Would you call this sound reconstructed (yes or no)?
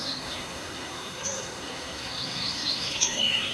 yes